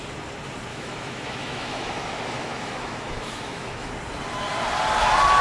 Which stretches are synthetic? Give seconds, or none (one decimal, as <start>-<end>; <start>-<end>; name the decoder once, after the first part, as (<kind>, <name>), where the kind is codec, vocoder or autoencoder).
0.7-3.9 (autoencoder, DAC-VAE)